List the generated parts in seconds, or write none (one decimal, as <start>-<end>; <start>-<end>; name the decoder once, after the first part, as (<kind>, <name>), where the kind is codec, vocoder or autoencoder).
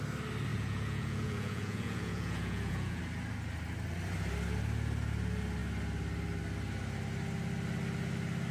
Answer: 0.5-3.0 (vocoder, Vocos)